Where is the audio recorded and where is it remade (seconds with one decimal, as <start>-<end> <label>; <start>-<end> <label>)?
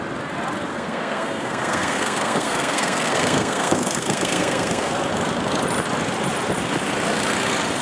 0.0-0.7 recorded; 0.7-4.9 remade; 4.9-7.8 recorded